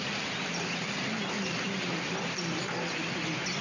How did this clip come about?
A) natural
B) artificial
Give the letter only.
A